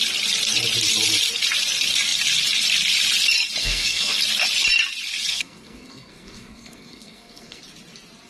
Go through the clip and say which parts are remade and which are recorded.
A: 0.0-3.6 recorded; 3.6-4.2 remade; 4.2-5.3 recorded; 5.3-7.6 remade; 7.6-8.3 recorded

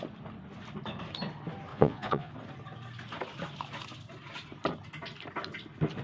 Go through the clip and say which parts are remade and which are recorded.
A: 0.0-1.7 recorded; 1.7-2.3 remade; 2.3-6.0 recorded

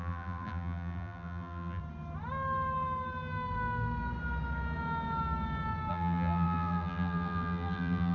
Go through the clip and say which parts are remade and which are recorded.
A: 0.0-1.8 remade; 1.8-5.9 recorded; 5.9-8.1 remade

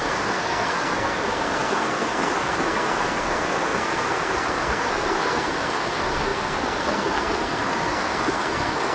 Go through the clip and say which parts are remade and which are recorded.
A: 0.0-8.9 remade

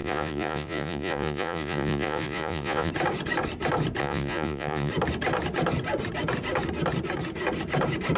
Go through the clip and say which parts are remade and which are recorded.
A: 0.0-2.9 remade; 2.9-4.0 recorded; 4.0-4.9 remade; 4.9-8.2 recorded